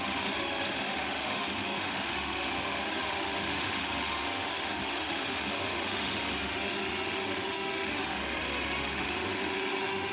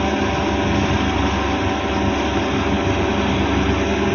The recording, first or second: second